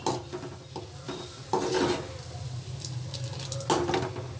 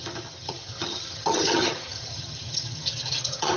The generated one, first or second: second